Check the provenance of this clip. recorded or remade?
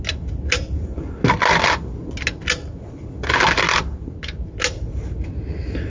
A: recorded